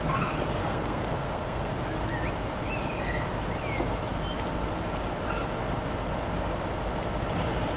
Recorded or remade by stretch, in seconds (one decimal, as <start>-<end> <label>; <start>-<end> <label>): 0.0-0.6 recorded; 0.6-1.7 remade; 1.7-7.8 recorded